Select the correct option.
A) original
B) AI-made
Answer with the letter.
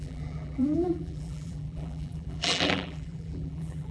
B